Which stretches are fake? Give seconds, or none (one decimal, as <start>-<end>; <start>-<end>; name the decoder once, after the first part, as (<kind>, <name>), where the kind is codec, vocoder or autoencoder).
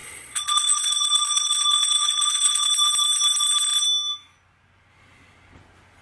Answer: 0.0-2.7 (vocoder, Vocos)